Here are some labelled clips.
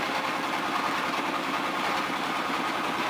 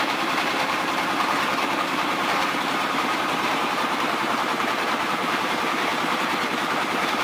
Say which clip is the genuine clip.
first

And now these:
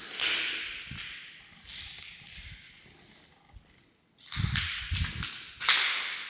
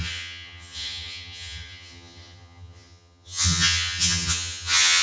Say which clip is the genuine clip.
first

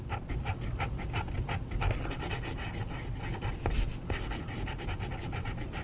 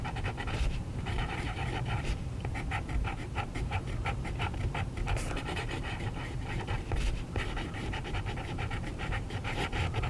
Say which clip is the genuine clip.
first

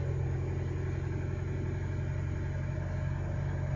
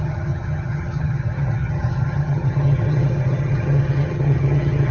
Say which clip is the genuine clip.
first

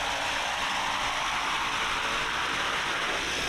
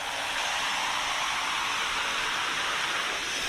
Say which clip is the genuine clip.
first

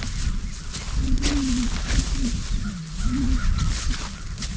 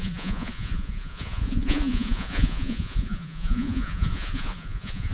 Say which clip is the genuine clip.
first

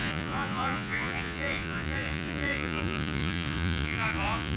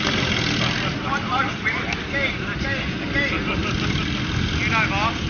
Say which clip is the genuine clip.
second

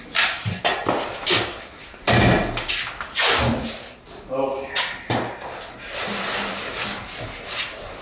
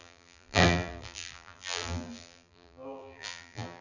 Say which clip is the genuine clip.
first